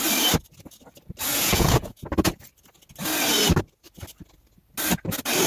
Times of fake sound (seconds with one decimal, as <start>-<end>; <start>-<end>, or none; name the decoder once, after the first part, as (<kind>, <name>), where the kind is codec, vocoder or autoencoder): 1.3-2.1 (vocoder, Vocos)